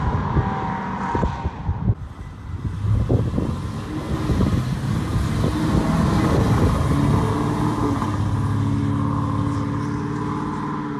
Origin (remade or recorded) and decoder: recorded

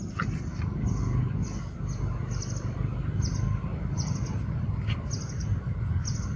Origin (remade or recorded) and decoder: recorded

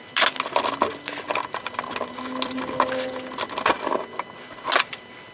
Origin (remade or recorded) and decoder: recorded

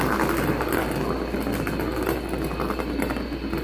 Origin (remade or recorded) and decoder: recorded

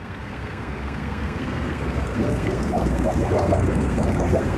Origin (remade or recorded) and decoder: remade, codec, SNAC